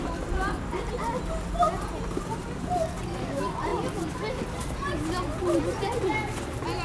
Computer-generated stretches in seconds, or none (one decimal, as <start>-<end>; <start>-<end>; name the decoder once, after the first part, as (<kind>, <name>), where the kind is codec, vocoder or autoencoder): none